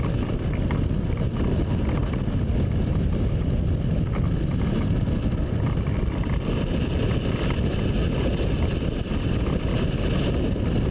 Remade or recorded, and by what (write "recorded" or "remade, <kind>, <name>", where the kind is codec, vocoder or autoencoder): recorded